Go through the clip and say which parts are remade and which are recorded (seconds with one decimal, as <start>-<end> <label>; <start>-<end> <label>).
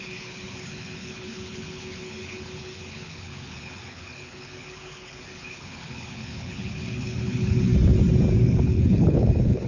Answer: 0.0-7.7 remade; 7.7-8.4 recorded; 8.4-9.7 remade